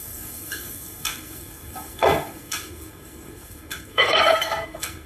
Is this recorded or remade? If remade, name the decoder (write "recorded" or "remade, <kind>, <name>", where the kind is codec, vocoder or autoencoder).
remade, codec, SNAC